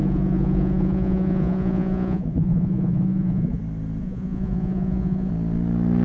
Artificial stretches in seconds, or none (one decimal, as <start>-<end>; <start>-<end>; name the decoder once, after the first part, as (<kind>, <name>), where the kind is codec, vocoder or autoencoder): 0.0-3.6 (vocoder, Vocos); 4.0-5.3